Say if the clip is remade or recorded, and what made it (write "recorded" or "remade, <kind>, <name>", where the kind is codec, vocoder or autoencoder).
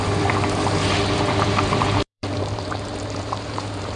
remade, vocoder, BigVGAN v2